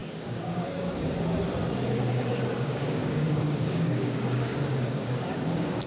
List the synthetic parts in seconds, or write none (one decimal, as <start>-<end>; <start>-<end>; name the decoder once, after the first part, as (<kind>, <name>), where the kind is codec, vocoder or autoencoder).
0.0-1.1 (codec, DAC); 2.3-5.9